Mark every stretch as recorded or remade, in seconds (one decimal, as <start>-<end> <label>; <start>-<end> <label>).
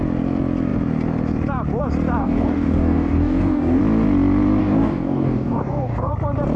0.0-2.2 recorded; 2.2-3.8 remade; 3.8-4.6 recorded; 4.6-6.1 remade; 6.1-6.6 recorded